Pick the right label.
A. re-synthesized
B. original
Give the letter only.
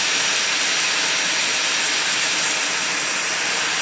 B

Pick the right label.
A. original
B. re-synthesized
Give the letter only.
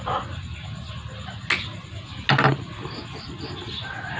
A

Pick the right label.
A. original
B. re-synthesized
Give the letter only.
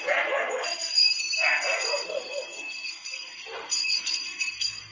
B